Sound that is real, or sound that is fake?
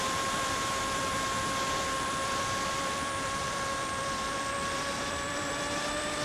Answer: fake